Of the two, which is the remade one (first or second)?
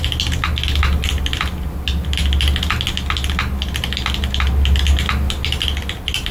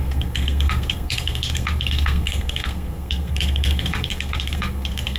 second